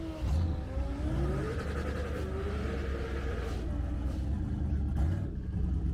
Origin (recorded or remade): recorded